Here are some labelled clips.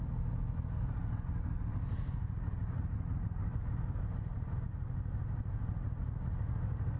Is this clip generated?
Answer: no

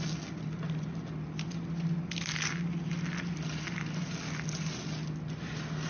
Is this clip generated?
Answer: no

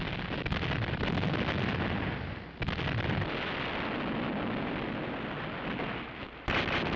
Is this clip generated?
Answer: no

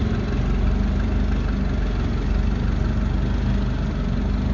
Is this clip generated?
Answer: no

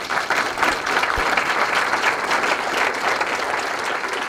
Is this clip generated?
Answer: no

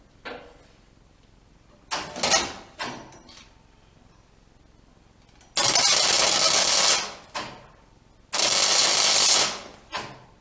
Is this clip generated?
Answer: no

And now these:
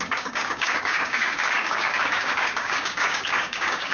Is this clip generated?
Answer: yes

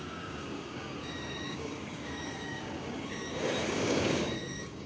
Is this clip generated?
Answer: yes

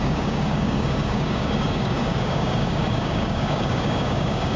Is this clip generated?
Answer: yes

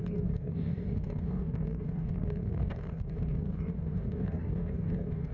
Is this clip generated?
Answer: yes